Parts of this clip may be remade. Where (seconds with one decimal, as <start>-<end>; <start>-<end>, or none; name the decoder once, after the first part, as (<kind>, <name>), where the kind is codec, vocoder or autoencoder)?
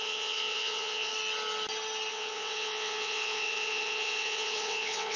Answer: 0.0-1.1 (vocoder, WaveNeXt); 2.1-5.2